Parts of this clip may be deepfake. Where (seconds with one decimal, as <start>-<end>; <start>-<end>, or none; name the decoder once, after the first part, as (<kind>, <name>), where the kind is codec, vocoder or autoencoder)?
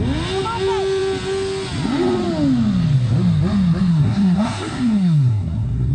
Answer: 3.9-5.9 (codec, SNAC)